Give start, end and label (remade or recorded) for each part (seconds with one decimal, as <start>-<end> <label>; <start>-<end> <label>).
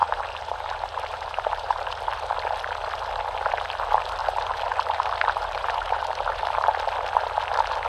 0.0-1.8 remade; 1.8-4.2 recorded; 4.2-6.4 remade; 6.4-7.9 recorded